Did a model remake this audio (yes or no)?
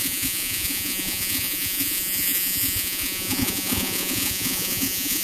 yes